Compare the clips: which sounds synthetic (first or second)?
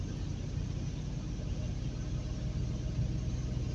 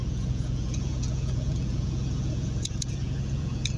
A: second